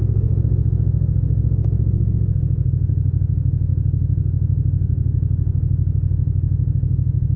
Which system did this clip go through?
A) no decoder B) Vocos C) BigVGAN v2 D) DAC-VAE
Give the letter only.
D